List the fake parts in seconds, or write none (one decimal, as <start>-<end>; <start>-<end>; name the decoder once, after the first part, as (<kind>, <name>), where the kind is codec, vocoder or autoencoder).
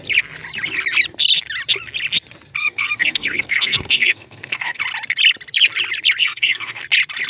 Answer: 2.6-4.8 (codec, SNAC); 6.2-6.8